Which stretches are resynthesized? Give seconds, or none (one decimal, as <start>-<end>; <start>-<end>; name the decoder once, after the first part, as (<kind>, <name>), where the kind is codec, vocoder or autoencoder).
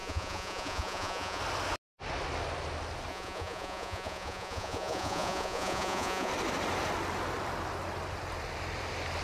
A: 0.0-1.4 (vocoder, Vocos); 3.1-6.3